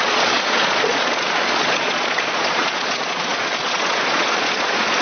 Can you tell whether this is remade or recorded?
remade